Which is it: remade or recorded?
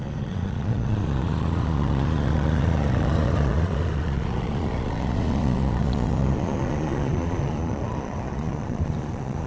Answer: remade